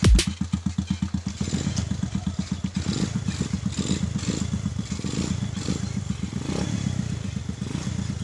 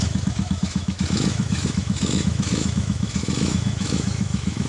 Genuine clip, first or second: first